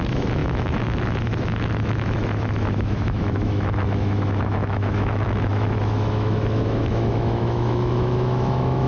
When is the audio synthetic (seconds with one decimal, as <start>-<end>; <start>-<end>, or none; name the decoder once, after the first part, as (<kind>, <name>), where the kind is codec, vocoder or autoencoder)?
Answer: 0.0-8.9 (autoencoder, DAC-VAE)